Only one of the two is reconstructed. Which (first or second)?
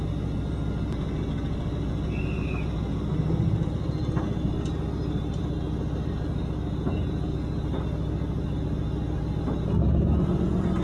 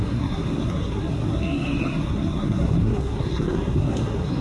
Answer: second